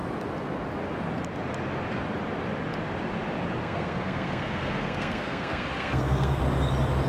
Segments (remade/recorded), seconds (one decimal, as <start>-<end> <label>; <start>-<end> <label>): 0.0-3.6 recorded; 3.6-6.4 remade; 6.4-7.1 recorded